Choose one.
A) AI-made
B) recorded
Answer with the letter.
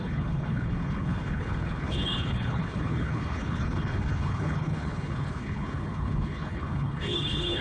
A